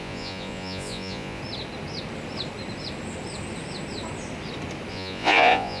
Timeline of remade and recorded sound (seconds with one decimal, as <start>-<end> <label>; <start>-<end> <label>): 0.0-1.4 remade; 1.4-4.9 recorded; 4.9-5.8 remade